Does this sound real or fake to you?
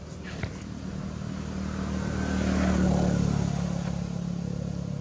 real